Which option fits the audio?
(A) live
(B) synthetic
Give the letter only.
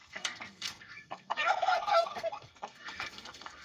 B